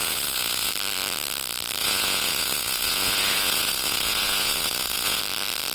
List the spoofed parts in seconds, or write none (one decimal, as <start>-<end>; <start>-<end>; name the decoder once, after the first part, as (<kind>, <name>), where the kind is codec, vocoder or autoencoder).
0.0-0.7 (vocoder, Vocos); 1.8-5.2